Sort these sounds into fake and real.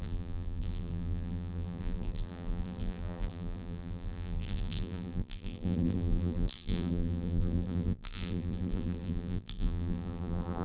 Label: fake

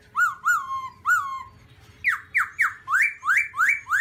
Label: real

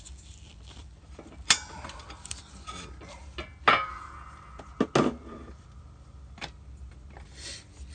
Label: real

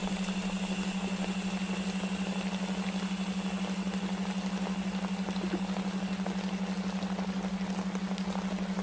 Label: real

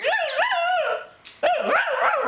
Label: real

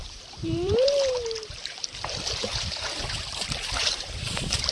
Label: fake